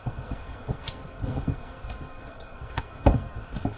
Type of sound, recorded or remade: remade